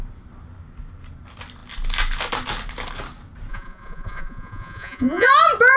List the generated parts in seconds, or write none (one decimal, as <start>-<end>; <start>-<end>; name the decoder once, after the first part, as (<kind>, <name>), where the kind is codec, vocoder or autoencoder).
3.5-5.3 (vocoder, Vocos)